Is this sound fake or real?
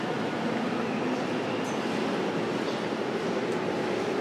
real